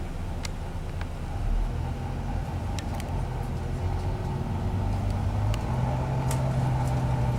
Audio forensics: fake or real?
real